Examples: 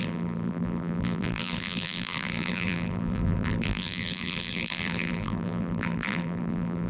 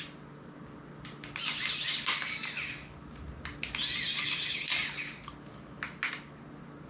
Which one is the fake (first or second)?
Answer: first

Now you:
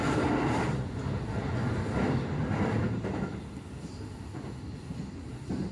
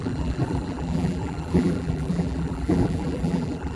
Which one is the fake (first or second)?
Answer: second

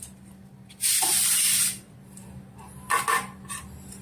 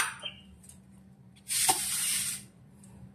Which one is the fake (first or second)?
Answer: second